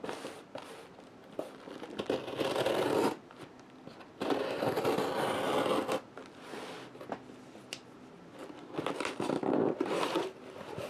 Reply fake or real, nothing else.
real